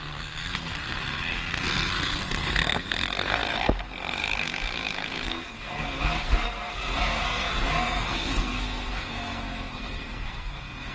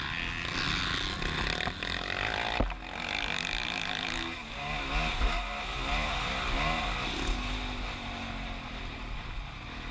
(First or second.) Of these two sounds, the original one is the second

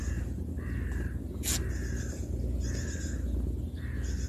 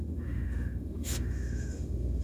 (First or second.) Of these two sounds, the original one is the first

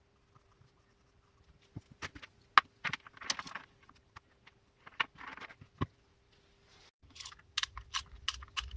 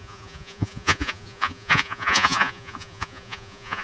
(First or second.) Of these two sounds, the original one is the first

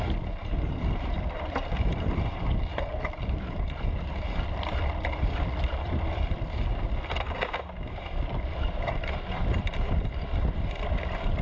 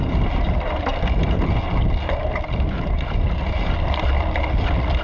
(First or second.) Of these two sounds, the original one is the second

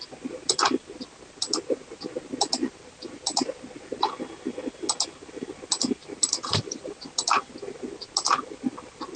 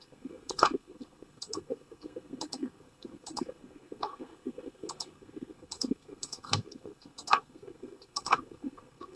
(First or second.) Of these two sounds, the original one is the first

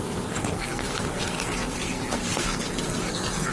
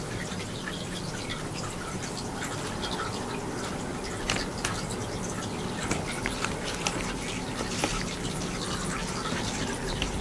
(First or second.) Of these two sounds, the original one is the second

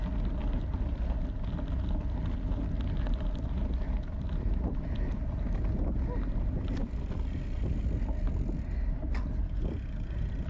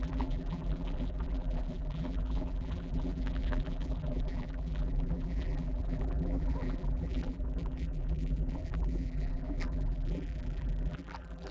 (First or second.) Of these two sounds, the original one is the first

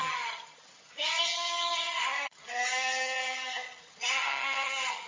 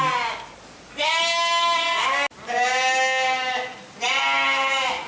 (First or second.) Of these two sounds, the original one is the second